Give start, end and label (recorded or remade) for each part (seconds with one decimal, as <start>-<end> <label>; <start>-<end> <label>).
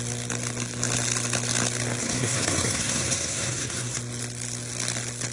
0.0-2.0 recorded; 2.0-4.0 remade; 4.0-5.3 recorded